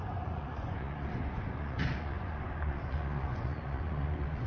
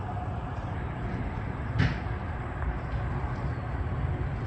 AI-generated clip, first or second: first